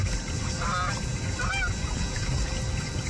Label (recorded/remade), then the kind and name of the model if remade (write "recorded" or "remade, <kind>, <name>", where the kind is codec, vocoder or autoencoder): recorded